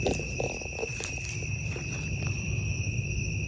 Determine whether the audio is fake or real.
fake